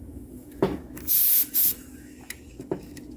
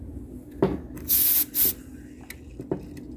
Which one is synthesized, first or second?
first